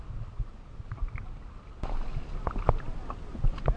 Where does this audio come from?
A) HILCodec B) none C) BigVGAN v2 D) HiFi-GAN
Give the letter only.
B